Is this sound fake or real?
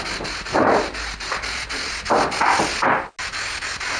real